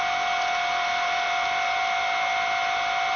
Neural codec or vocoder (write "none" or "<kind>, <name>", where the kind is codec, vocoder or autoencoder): none